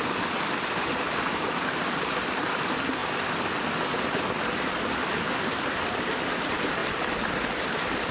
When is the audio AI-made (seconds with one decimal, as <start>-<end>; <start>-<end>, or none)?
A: 0.9-2.6